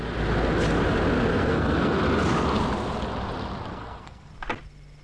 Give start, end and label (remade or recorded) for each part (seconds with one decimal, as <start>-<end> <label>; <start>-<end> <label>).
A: 0.0-1.3 recorded; 1.3-2.0 remade; 2.0-3.7 recorded; 3.7-4.3 remade; 4.3-5.0 recorded